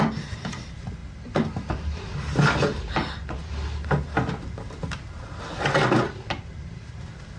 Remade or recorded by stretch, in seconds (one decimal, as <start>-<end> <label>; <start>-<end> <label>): 0.0-7.4 recorded